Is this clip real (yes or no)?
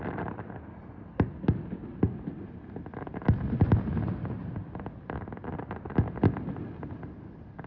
yes